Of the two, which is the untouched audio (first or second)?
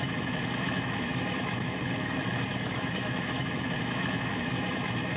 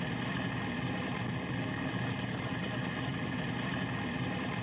second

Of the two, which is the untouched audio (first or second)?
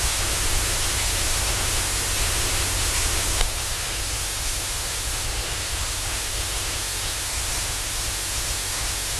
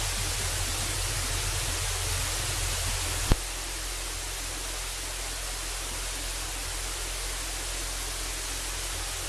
second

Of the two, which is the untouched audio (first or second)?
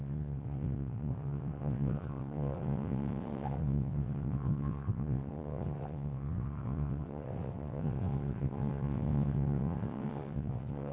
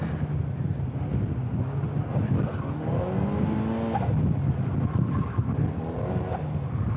second